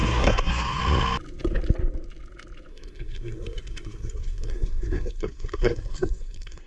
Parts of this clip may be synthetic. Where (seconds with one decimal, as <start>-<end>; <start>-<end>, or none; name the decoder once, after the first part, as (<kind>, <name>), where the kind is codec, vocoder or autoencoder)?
0.0-0.8 (codec, SNAC); 2.7-6.7